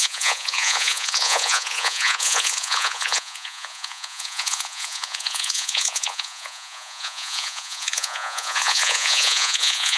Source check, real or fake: fake